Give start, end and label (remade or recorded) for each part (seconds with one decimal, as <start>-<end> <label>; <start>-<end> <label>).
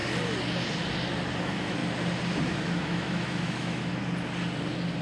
0.0-1.4 recorded; 1.4-1.8 remade; 1.8-2.5 recorded; 2.5-3.9 remade; 3.9-5.0 recorded